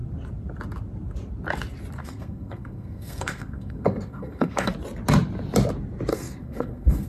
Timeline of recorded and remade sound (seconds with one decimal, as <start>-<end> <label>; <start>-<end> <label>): 0.0-2.0 recorded; 2.0-4.7 remade; 4.7-6.1 recorded; 6.1-7.1 remade

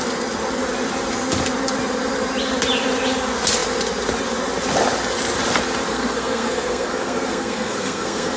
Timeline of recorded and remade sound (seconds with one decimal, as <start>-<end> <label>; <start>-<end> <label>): 0.0-5.9 recorded; 5.9-8.4 remade

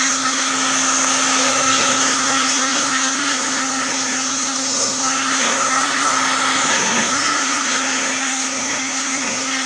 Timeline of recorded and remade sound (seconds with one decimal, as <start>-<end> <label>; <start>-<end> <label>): 0.0-0.5 remade; 0.5-1.5 recorded; 1.5-6.1 remade; 6.1-6.7 recorded; 6.7-9.7 remade